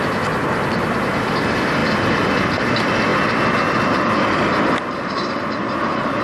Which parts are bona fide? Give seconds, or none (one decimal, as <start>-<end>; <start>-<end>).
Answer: 0.0-6.2